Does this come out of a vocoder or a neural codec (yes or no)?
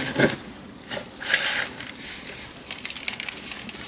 no